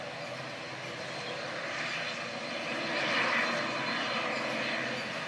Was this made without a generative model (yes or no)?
yes